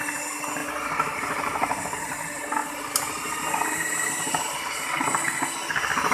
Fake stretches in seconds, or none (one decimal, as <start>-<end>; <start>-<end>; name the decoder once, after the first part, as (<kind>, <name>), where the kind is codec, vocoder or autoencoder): 0.6-2.0 (vocoder, BigVGAN v2); 2.6-4.4